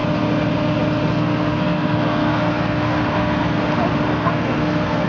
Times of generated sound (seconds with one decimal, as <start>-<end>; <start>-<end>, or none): 1.1-3.6; 4.1-5.1